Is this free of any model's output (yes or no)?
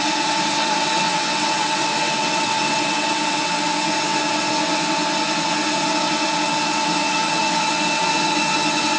no